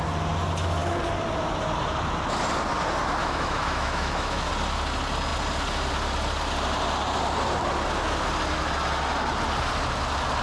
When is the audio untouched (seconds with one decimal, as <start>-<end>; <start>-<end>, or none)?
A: 0.0-3.2; 4.5-10.4